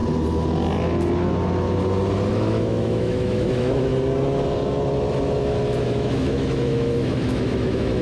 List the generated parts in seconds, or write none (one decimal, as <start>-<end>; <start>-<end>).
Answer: 2.3-3.9; 5.8-8.0